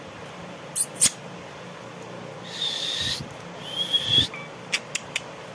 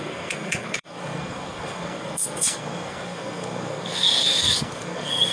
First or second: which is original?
first